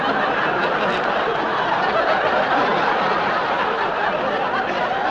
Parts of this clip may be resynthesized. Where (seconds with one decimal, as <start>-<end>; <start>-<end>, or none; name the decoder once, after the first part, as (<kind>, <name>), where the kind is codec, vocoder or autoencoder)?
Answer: none